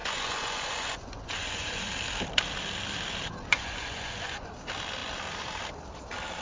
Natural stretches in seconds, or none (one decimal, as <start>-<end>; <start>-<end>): 1.9-3.5; 4.5-6.4